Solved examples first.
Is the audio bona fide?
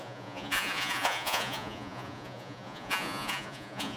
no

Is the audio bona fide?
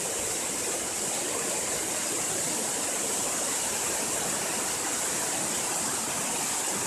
yes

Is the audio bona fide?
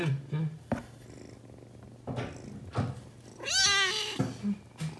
yes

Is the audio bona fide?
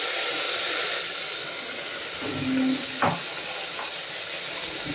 yes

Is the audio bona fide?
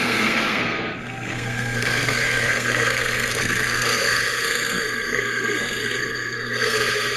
no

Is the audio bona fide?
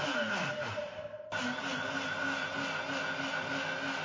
yes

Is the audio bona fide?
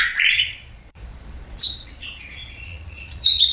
no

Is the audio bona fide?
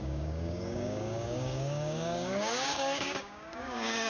no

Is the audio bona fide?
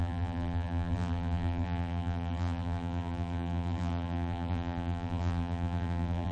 no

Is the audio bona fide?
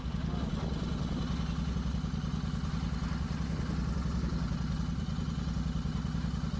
yes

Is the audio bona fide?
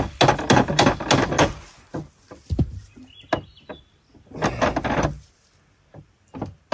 yes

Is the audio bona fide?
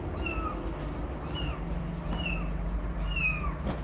yes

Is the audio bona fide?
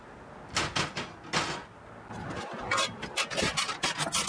yes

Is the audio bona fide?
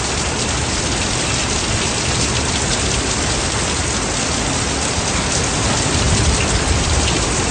yes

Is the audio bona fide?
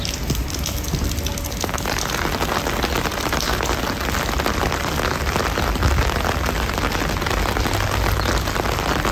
yes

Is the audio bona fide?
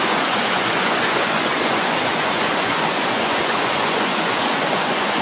no